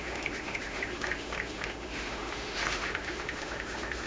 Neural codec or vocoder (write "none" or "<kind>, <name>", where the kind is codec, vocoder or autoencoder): autoencoder, DAC-VAE